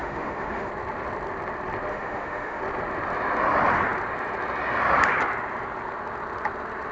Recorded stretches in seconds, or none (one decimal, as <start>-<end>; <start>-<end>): 0.7-1.9; 2.6-6.9